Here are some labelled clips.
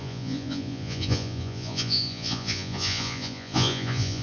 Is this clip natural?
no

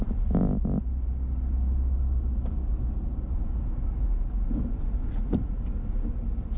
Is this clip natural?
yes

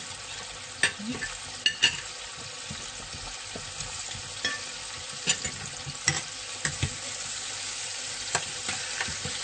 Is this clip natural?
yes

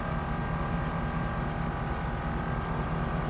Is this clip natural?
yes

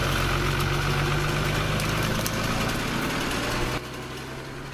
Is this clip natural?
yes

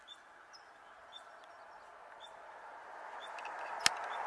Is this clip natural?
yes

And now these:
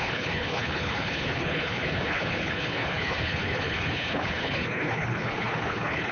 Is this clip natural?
no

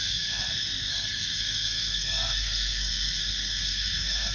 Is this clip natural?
no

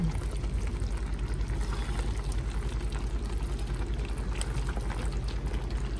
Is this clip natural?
yes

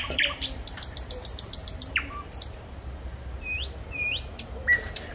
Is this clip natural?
no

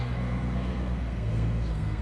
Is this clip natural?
no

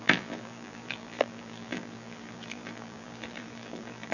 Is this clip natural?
no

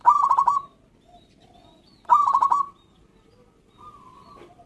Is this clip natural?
yes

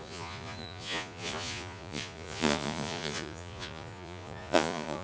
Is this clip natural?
no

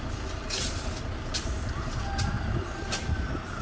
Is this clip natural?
yes